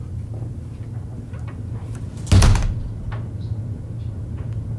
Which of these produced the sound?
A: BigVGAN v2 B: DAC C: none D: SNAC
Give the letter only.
C